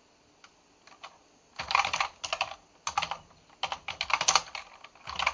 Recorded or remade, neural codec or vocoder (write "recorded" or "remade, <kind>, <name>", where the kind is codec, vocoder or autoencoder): recorded